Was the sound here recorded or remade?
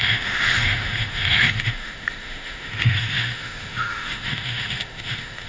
remade